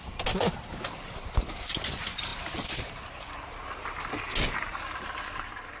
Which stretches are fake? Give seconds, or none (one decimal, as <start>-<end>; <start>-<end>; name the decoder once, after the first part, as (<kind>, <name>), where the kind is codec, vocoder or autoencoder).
none